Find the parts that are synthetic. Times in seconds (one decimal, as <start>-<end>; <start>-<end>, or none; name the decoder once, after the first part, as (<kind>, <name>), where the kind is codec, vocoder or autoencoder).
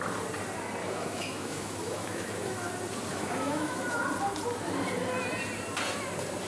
0.8-2.7 (autoencoder, DAC-VAE); 3.1-4.0